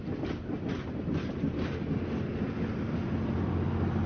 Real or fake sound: real